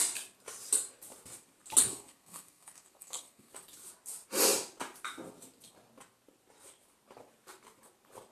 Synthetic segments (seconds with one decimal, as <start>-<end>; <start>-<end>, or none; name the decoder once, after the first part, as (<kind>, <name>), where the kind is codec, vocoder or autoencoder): 1.8-3.5 (codec, SNAC)